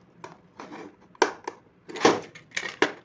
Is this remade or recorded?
recorded